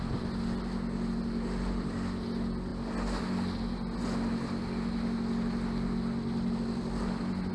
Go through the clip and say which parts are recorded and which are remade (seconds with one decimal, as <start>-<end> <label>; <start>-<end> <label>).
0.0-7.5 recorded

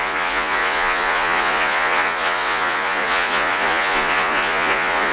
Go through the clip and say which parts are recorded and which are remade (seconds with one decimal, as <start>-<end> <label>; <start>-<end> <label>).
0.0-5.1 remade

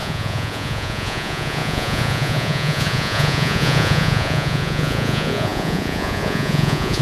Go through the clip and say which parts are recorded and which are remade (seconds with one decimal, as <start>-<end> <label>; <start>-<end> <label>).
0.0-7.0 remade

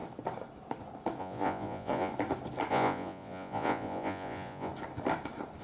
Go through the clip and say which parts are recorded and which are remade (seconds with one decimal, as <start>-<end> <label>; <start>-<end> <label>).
0.0-1.2 recorded; 1.2-2.1 remade; 2.1-2.7 recorded; 2.7-4.7 remade; 4.7-5.6 recorded

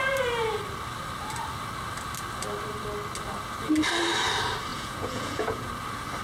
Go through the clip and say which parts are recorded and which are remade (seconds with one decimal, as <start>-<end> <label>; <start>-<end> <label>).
0.0-4.7 recorded; 4.7-5.7 remade; 5.7-6.2 recorded

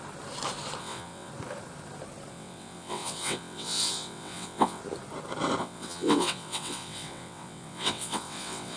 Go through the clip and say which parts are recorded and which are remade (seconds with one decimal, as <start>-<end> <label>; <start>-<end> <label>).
0.0-0.8 recorded; 0.8-1.3 remade; 1.3-2.3 recorded; 2.3-4.8 remade; 4.8-5.6 recorded; 5.6-8.8 remade